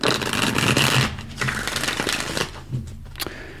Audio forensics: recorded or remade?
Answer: remade